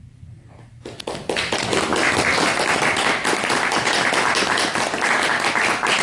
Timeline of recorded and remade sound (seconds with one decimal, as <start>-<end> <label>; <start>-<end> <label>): 0.0-6.0 recorded